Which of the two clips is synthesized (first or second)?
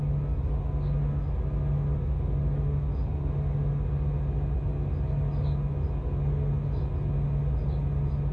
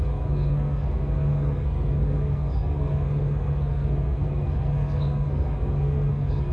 second